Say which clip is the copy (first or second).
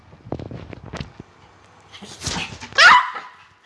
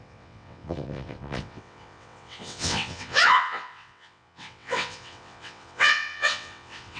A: second